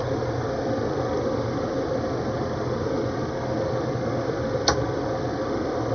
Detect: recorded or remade recorded